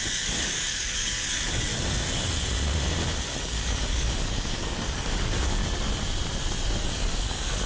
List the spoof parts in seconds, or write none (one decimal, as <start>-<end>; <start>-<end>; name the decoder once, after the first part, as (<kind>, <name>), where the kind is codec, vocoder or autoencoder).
0.0-1.7 (codec, DAC); 3.4-5.6; 6.8-7.7